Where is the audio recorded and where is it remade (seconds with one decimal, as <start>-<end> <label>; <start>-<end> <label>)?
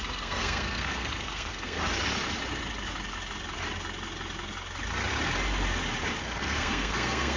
0.0-1.8 remade; 1.8-6.2 recorded; 6.2-7.4 remade